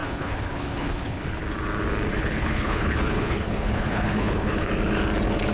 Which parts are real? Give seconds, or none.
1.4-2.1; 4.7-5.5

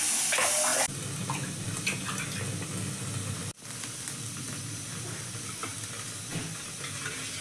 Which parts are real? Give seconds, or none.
0.0-7.4

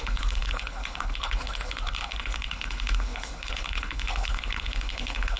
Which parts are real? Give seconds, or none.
none

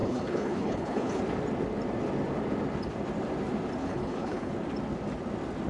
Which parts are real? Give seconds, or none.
1.2-3.8; 4.5-5.7

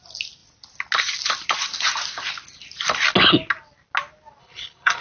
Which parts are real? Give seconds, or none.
0.0-4.4

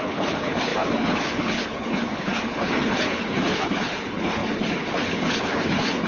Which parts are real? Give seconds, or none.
none

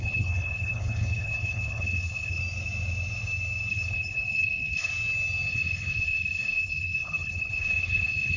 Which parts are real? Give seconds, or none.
2.4-3.7; 4.9-5.5

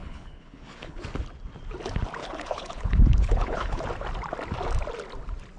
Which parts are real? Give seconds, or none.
1.0-2.2; 3.8-5.6